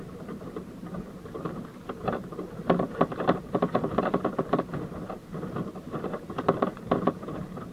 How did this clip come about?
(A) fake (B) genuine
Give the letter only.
A